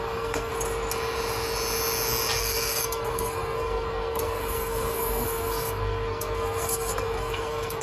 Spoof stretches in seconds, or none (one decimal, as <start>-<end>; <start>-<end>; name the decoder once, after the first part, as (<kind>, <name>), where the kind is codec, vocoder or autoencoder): 0.0-0.5 (codec, SNAC); 2.4-7.8